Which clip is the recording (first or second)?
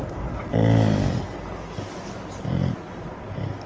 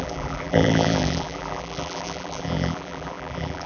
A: first